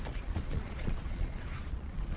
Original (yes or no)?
no